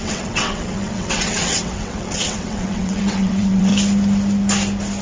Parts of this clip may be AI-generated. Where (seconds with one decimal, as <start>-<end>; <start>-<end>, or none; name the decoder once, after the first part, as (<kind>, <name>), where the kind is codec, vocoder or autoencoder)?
0.0-3.7 (vocoder, WaveNeXt)

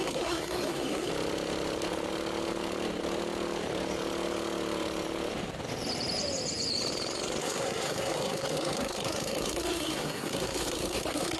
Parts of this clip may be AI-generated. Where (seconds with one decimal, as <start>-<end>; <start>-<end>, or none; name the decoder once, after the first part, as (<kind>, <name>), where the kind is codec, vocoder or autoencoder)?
0.0-1.1 (codec, SNAC); 7.4-11.4

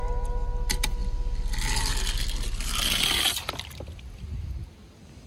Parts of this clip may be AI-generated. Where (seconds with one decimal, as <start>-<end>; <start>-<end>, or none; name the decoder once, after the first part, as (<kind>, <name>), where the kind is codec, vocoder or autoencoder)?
none

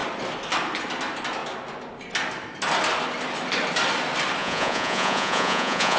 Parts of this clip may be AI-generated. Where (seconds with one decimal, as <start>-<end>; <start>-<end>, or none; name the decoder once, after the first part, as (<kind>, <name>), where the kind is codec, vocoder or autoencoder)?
4.4-6.0 (vocoder, Vocos)

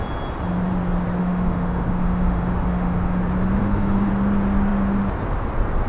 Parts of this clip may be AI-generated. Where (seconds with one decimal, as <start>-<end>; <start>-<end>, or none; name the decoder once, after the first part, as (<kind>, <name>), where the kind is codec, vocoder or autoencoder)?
1.2-3.2 (autoencoder, DAC-VAE); 3.6-4.1

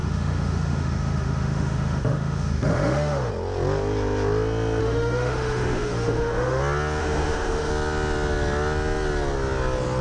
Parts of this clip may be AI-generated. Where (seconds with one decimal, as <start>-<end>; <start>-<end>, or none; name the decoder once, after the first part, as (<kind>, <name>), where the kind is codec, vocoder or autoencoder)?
0.0-3.3 (autoencoder, DAC-VAE); 4.8-6.6; 7.0-7.7

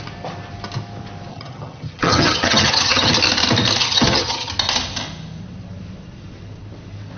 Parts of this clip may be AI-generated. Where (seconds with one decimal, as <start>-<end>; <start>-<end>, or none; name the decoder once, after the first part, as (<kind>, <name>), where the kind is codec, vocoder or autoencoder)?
1.3-3.1 (vocoder, HiFi-GAN); 3.8-4.5